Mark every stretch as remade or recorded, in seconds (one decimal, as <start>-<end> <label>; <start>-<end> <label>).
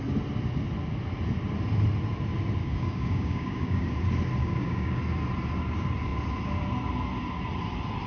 0.0-2.6 recorded; 2.6-3.9 remade; 3.9-4.4 recorded; 4.4-5.0 remade; 5.0-8.1 recorded